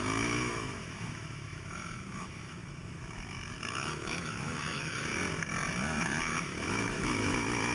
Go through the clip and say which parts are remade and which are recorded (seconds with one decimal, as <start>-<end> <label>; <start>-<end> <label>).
0.0-5.1 remade; 5.1-6.0 recorded; 6.0-7.7 remade